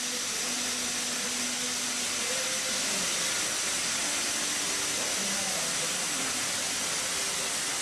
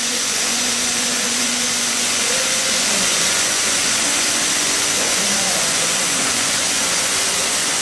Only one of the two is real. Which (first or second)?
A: first